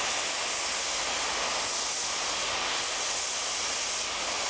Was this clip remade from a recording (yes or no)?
no